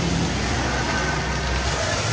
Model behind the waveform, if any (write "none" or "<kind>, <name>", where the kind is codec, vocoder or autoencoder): none